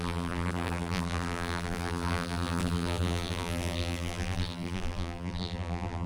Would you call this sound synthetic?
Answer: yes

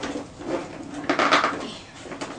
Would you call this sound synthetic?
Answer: no